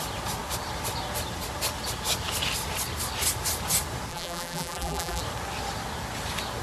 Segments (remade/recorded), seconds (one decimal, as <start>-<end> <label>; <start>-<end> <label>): 0.0-4.1 recorded; 4.1-5.2 remade; 5.2-6.6 recorded

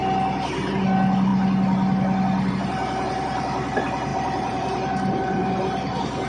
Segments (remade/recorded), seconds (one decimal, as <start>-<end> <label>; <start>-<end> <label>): 0.0-4.1 recorded; 4.1-5.6 remade; 5.6-6.3 recorded

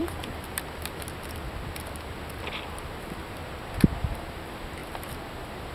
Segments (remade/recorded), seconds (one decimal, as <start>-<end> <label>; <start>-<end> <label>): 0.0-3.4 remade; 3.4-4.0 recorded; 4.0-5.7 remade